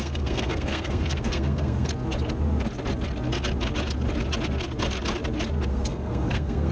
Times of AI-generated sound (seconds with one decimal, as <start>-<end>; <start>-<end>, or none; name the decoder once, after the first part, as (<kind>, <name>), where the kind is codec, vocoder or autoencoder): 0.0-1.9 (codec, SNAC); 5.7-6.7

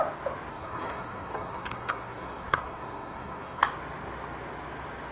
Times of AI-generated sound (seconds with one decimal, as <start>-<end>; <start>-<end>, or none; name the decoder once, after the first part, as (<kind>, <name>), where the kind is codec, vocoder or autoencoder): 0.5-3.6 (codec, SNAC)

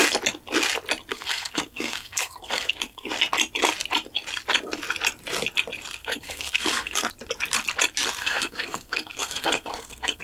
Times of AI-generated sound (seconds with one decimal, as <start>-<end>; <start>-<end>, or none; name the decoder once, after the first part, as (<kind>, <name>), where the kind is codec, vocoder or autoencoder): 1.1-3.1 (codec, SNAC); 6.0-7.1; 8.2-10.2

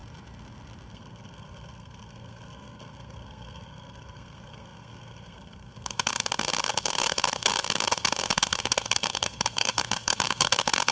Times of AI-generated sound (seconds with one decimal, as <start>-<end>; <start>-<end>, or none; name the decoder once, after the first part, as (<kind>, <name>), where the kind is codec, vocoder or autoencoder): 0.9-10.9 (codec, SNAC)

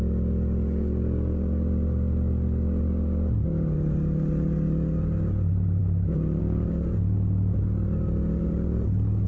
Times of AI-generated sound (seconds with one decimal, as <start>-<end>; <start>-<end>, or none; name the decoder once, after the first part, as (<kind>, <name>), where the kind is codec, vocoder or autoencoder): none

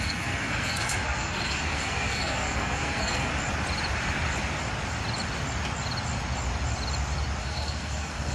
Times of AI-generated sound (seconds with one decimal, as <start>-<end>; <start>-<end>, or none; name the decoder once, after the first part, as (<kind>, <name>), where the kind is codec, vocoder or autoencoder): 0.0-3.3 (codec, SNAC); 7.4-8.3

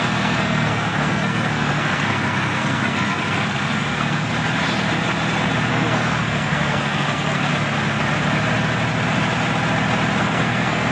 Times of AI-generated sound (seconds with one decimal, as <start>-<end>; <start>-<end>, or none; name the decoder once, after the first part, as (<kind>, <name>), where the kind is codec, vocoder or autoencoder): 0.0-4.3 (codec, SNAC); 5.7-7.5; 10.2-10.9

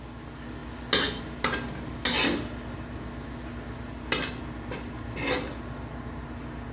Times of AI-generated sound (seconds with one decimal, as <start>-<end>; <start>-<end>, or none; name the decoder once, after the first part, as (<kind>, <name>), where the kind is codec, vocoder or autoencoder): none